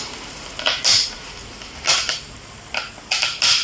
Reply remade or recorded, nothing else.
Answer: recorded